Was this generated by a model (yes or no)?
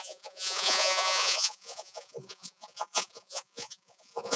yes